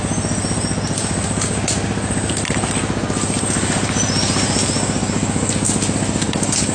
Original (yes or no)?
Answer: yes